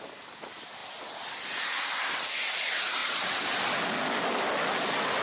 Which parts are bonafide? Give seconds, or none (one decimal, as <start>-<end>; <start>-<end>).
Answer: 0.0-5.2